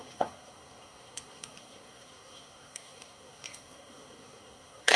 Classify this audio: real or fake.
fake